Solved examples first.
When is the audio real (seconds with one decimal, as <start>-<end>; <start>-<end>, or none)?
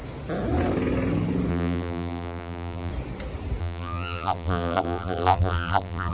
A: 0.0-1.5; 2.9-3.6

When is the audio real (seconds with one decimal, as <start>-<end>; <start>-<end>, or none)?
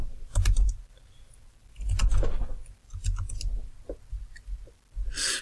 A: 0.0-5.4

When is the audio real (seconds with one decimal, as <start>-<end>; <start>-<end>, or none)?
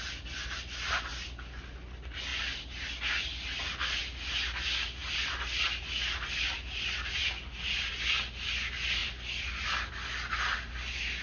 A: 0.0-5.0; 5.8-11.2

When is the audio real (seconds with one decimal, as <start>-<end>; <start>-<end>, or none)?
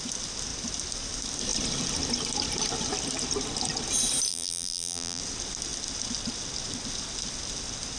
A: 0.0-4.3; 5.2-8.0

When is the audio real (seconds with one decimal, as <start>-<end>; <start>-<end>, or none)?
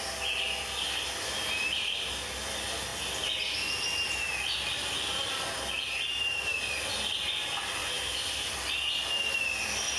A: 0.0-10.0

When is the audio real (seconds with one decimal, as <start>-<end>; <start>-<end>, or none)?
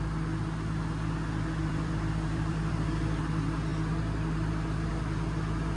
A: 0.0-1.6; 2.7-5.8